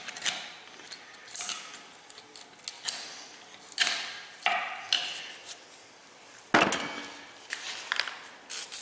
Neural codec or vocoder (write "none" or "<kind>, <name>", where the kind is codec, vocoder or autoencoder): none